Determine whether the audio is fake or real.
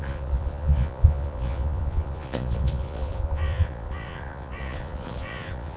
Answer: fake